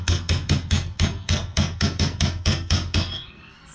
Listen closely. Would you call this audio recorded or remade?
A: remade